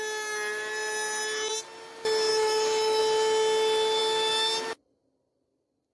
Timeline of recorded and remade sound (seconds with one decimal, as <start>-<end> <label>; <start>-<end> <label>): 0.0-2.3 recorded; 2.3-3.0 remade; 3.0-5.9 recorded